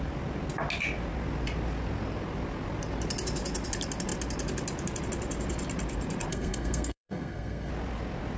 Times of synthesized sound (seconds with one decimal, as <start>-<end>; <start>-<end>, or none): 6.3-7.7